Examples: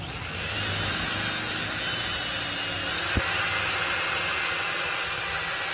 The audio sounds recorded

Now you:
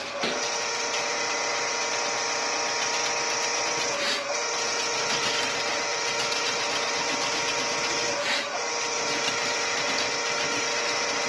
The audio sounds recorded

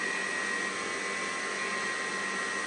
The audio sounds recorded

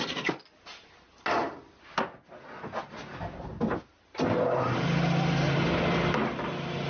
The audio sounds recorded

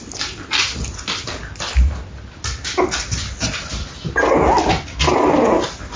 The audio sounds recorded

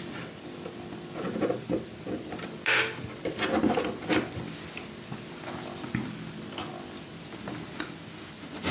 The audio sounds recorded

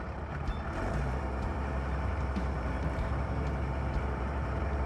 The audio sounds remade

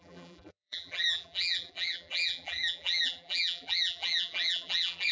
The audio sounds remade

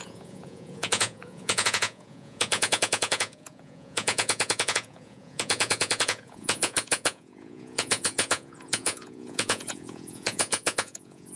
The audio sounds remade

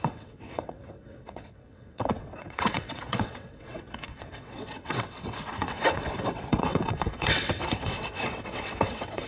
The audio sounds remade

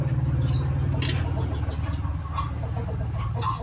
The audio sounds recorded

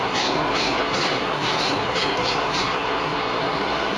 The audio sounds remade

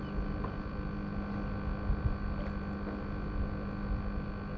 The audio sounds recorded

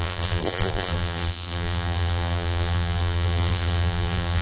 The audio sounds remade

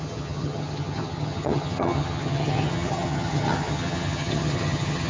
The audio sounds remade